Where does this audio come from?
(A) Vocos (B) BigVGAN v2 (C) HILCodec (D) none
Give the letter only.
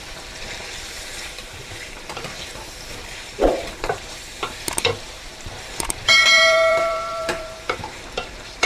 B